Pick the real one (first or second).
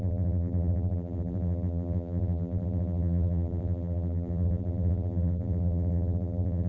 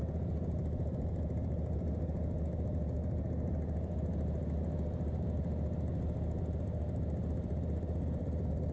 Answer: second